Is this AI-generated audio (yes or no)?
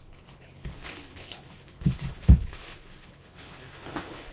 yes